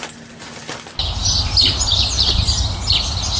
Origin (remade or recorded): recorded